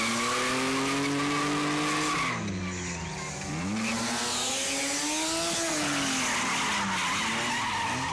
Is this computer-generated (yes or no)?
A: no